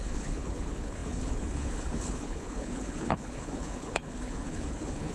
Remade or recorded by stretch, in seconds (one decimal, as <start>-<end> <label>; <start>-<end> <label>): 0.0-5.1 remade